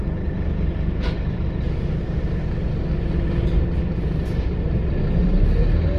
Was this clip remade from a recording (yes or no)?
no